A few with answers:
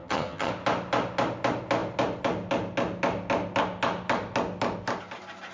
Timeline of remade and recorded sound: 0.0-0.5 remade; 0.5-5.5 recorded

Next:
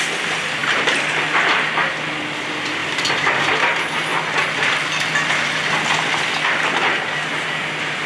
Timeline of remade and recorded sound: 0.0-2.8 recorded; 2.8-3.5 remade; 3.5-4.1 recorded; 4.1-5.3 remade; 5.3-8.1 recorded

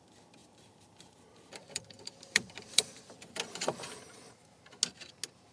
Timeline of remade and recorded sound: 0.0-0.4 recorded; 0.4-3.7 remade; 3.7-5.5 recorded

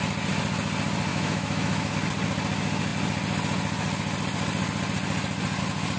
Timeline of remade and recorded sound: 0.0-1.1 recorded; 1.1-1.9 remade; 1.9-6.0 recorded

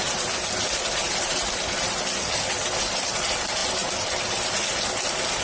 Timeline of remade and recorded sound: 0.0-5.4 recorded

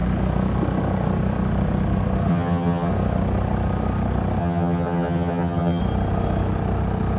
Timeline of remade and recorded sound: 0.0-2.3 recorded; 2.3-2.9 remade; 2.9-4.4 recorded; 4.4-5.8 remade; 5.8-7.2 recorded

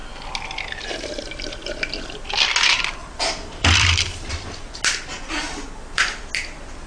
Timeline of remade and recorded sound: 0.0-3.0 recorded; 3.0-4.8 remade; 4.8-6.9 recorded

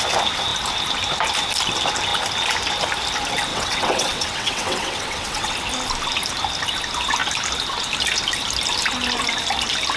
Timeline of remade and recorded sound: 0.0-3.5 recorded; 3.5-5.5 remade; 5.5-10.0 recorded